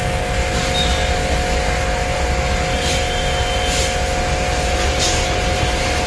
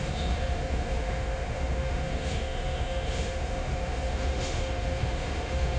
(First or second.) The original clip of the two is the first